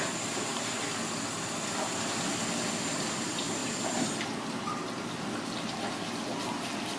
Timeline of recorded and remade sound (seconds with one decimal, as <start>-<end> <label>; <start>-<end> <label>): 0.0-7.0 recorded

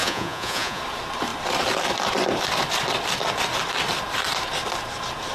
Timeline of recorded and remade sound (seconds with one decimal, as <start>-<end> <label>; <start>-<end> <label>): 0.0-0.8 remade; 0.8-5.3 recorded

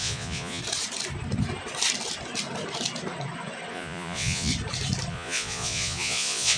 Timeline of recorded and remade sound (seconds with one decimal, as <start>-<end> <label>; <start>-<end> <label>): 0.0-0.6 remade; 0.6-3.7 recorded; 3.7-4.5 remade; 4.5-5.1 recorded; 5.1-6.6 remade

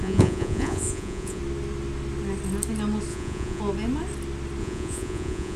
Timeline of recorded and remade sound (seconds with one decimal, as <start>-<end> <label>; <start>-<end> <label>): 0.0-1.4 remade; 1.4-3.1 recorded; 3.1-3.6 remade; 3.6-4.6 recorded; 4.6-5.6 remade

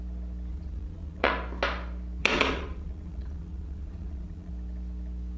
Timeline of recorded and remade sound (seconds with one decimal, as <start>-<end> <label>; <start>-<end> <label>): 0.0-0.5 recorded; 0.5-1.3 remade; 1.3-2.2 recorded; 2.2-4.5 remade; 4.5-5.4 recorded

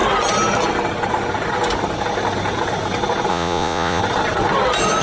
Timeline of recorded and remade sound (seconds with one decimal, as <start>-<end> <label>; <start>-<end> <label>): 0.0-3.3 recorded; 3.3-4.0 remade; 4.0-5.0 recorded

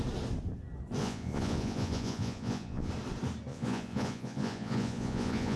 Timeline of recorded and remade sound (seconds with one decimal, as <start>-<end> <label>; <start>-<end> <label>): 0.0-1.0 recorded; 1.0-2.9 remade; 2.9-3.5 recorded; 3.5-5.6 remade

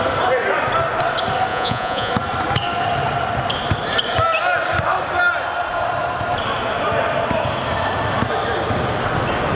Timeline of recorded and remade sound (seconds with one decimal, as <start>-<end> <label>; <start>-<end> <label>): 0.0-1.5 recorded; 1.5-2.1 remade; 2.1-9.5 recorded